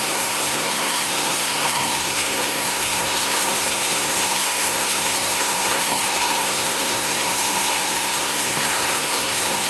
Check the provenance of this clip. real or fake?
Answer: fake